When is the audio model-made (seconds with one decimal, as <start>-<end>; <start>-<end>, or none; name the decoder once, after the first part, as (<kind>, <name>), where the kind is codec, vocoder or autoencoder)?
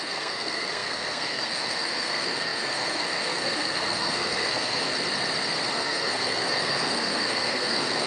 0.0-4.9 (codec, SNAC); 5.7-8.1